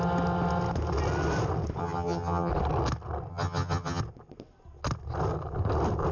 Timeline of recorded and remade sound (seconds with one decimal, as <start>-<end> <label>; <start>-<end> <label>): 0.0-1.8 recorded; 1.8-2.5 remade; 2.5-3.3 recorded; 3.3-4.0 remade; 4.0-6.1 recorded